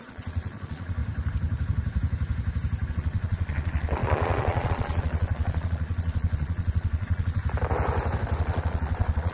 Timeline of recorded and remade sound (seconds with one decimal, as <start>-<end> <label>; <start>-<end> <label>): 0.0-1.0 remade; 1.0-2.9 recorded; 2.9-7.4 remade; 7.4-8.4 recorded; 8.4-9.3 remade